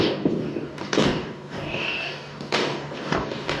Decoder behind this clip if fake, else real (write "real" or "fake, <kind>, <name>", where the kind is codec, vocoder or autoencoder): fake, codec, DAC